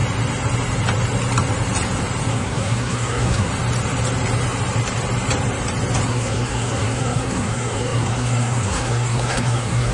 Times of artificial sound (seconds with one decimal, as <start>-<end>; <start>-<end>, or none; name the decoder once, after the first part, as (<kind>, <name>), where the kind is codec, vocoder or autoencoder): 2.3-3.5 (codec, SNAC); 6.1-9.9